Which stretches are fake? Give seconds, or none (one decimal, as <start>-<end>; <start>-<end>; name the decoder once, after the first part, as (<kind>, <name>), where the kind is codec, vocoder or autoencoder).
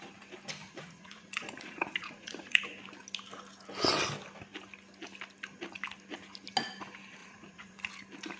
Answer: 0.6-2.6 (vocoder, Vocos); 7.2-7.9